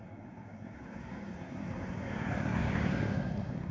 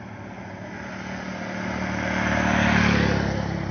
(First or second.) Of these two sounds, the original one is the second